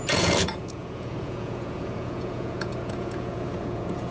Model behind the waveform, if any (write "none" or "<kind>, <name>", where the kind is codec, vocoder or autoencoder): vocoder, Vocos